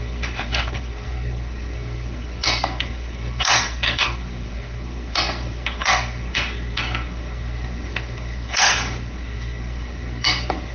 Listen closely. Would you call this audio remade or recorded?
remade